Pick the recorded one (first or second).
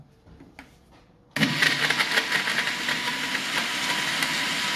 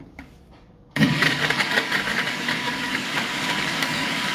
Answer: first